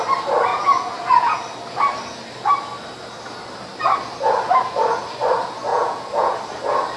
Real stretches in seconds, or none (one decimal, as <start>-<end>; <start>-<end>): 0.0-0.5; 1.4-5.7; 6.4-7.0